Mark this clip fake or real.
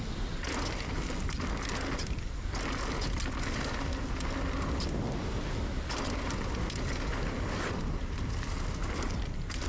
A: real